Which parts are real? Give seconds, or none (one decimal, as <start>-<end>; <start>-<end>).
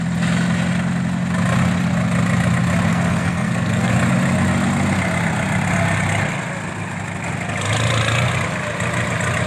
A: 0.0-2.9; 3.9-9.5